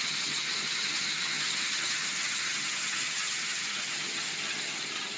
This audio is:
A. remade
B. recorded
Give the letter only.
A